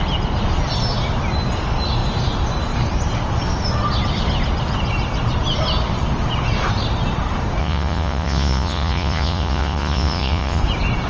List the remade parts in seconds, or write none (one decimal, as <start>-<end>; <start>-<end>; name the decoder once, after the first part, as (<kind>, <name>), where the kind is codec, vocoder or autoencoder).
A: 7.6-10.6 (vocoder, Vocos)